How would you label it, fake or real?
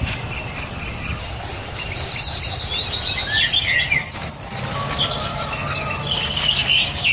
real